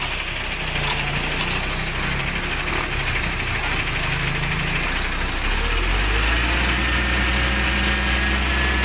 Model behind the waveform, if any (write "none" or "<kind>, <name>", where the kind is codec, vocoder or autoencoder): none